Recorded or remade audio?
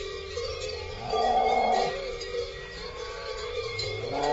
remade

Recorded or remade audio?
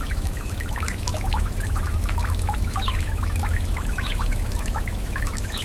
remade